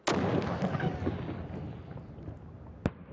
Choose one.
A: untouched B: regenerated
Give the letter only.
A